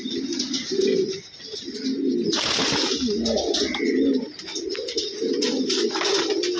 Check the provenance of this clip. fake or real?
real